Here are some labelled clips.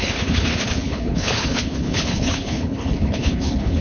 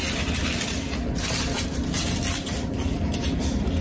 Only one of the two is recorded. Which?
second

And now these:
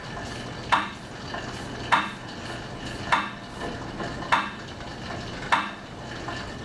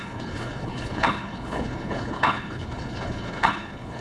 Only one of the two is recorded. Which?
first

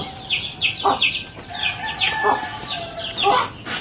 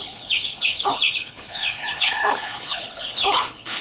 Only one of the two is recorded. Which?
first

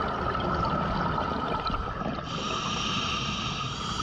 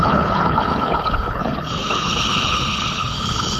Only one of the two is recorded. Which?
first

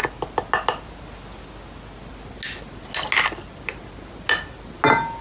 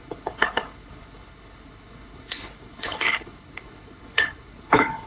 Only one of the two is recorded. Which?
first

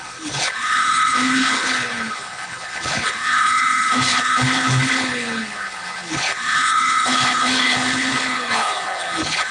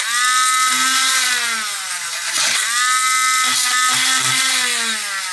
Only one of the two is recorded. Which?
second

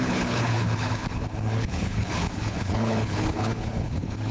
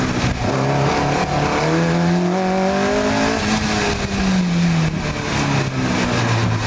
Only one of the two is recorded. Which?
second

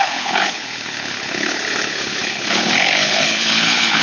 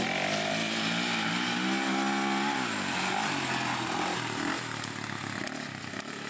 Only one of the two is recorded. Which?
second